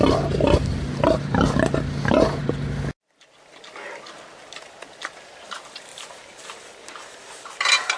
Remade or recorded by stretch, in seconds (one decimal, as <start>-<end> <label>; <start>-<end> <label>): 0.0-5.9 recorded; 5.9-8.0 remade